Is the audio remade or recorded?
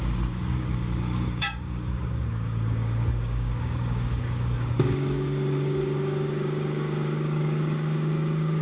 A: remade